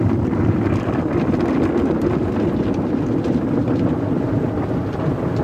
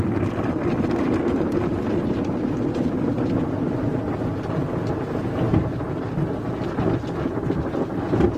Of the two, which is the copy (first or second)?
first